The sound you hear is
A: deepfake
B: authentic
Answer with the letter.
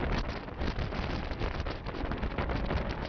B